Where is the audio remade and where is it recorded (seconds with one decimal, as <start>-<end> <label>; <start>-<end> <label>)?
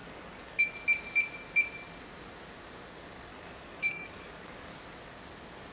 0.0-0.7 remade; 0.7-3.3 recorded; 3.3-4.8 remade; 4.8-5.7 recorded